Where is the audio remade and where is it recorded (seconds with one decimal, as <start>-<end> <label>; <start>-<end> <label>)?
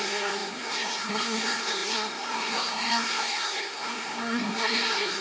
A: 0.0-5.2 remade